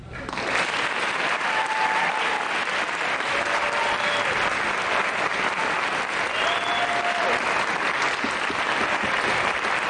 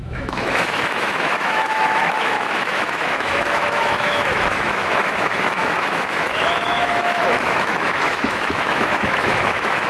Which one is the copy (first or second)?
second